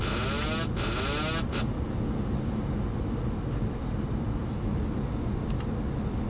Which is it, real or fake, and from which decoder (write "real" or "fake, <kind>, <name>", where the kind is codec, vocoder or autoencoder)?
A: real